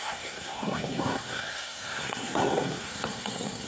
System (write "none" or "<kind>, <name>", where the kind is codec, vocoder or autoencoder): codec, SNAC